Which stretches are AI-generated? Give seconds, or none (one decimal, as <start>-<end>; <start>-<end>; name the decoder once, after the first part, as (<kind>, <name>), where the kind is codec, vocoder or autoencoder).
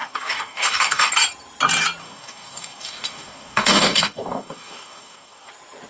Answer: 0.0-1.1 (codec, DAC); 2.0-5.5